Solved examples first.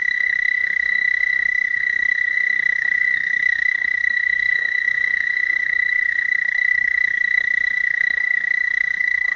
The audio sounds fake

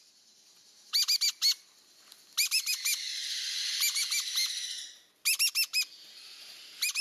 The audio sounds real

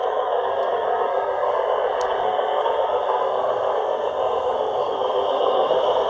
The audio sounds fake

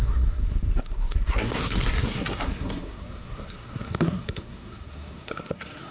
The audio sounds fake